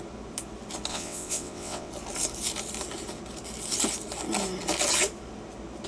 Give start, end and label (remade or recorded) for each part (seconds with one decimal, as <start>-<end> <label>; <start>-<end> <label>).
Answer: 0.0-0.9 recorded; 0.9-1.9 remade; 1.9-5.9 recorded